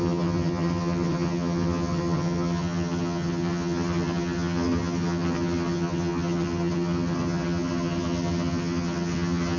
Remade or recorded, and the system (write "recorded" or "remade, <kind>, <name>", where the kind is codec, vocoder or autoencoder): remade, vocoder, HiFi-GAN